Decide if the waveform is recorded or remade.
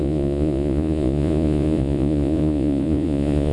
remade